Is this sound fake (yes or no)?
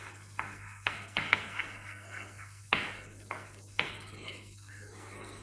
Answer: yes